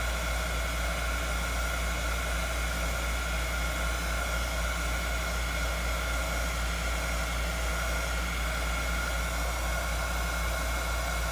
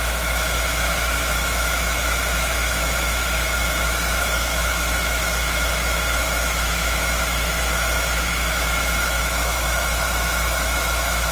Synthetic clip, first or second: second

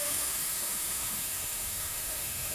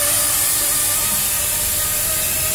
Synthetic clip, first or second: first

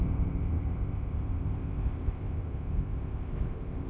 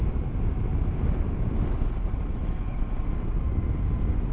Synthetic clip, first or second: first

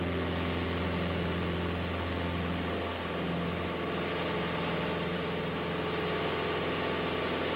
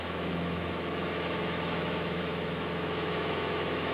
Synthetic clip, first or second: second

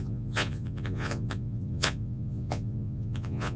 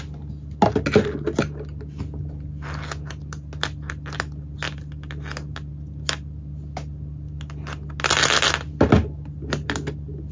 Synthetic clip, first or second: first